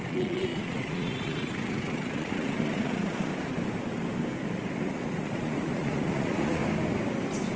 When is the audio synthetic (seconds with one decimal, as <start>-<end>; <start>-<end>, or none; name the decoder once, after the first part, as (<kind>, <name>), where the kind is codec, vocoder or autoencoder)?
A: 0.0-3.3 (vocoder, Vocos); 4.8-6.6